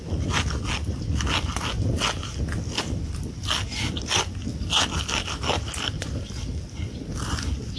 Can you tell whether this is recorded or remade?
recorded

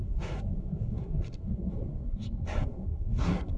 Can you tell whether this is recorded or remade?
remade